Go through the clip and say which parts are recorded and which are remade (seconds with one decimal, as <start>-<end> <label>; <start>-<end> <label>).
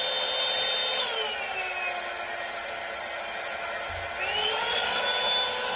0.0-4.4 recorded; 4.4-5.0 remade; 5.0-5.8 recorded